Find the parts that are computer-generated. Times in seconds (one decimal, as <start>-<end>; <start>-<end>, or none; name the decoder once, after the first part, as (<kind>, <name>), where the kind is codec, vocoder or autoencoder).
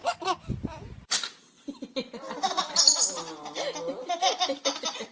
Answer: none